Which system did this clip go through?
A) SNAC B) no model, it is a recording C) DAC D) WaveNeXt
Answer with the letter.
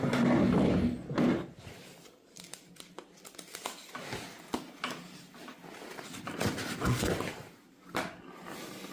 B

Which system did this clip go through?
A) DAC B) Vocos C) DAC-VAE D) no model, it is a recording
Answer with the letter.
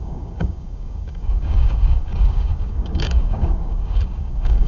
A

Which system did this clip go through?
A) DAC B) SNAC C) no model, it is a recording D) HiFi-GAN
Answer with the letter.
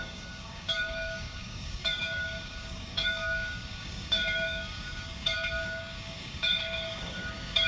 A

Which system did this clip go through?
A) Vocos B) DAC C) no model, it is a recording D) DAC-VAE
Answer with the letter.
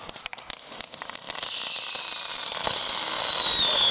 C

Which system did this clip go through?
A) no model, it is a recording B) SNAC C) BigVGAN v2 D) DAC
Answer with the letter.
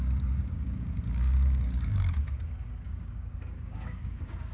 D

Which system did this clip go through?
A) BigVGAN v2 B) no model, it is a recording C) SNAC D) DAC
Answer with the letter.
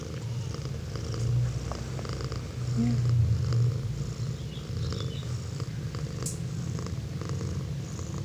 B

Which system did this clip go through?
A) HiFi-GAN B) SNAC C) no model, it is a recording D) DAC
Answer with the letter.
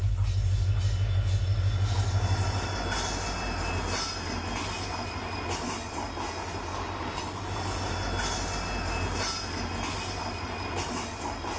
C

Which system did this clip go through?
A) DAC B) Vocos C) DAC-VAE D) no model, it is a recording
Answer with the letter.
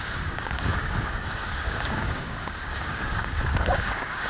A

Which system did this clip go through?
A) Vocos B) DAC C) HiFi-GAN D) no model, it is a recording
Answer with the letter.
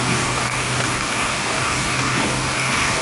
B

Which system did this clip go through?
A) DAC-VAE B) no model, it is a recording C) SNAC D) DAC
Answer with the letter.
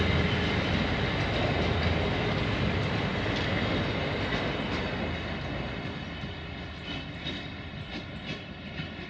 B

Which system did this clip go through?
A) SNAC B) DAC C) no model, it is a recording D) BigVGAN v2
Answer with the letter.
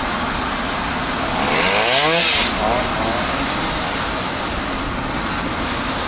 C